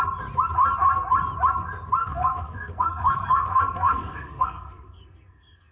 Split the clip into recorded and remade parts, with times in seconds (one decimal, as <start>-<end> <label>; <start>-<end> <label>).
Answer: 0.0-2.0 recorded; 2.0-5.7 remade